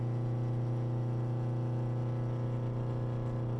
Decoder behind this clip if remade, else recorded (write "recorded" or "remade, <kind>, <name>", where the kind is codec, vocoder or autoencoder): recorded